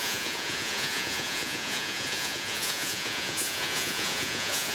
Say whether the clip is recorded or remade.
remade